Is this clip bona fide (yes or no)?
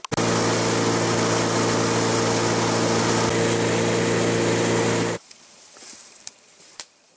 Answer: yes